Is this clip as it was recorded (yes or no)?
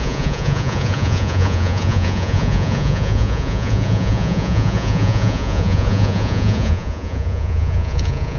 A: no